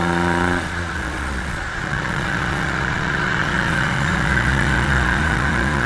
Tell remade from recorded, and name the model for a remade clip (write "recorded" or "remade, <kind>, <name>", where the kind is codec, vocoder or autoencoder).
remade, vocoder, Vocos